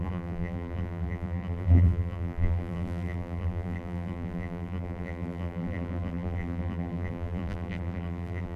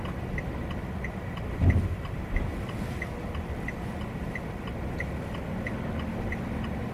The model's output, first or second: first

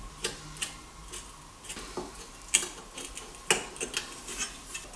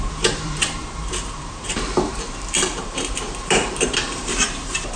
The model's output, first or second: second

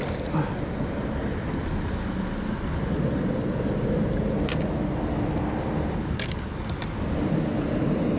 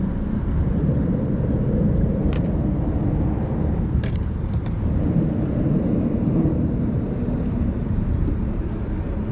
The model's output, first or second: second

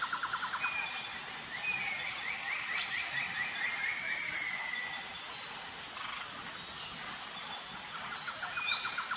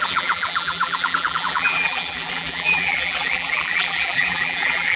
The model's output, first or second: second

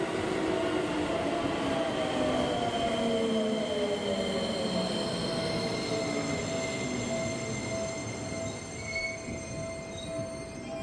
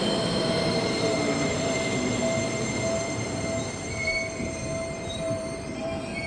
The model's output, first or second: second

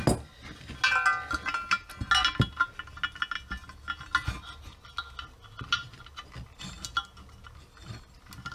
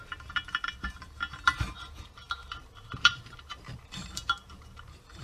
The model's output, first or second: second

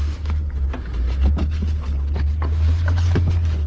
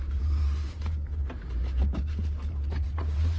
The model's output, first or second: second